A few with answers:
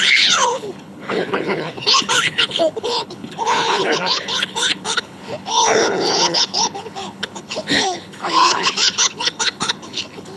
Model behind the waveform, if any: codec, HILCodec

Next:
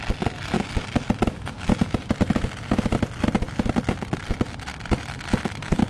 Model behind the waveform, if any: none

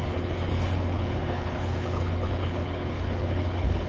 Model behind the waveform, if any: codec, HILCodec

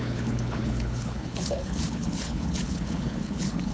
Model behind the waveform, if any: codec, HILCodec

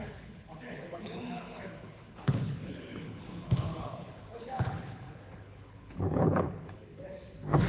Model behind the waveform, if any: codec, HILCodec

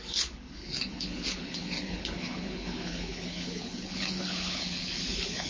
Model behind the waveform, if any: codec, HILCodec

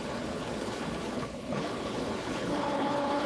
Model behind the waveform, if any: codec, HILCodec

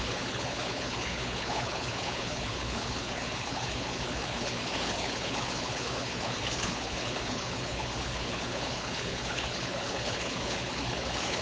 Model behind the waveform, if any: codec, HILCodec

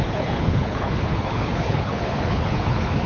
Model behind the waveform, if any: codec, HILCodec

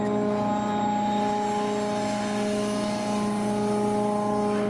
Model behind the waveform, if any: none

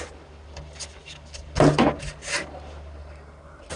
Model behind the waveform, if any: none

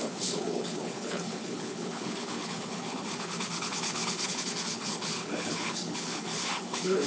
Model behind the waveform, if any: codec, HILCodec